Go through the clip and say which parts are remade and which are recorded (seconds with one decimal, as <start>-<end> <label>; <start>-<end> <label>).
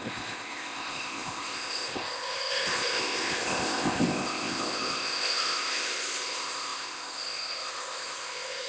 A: 0.0-8.7 remade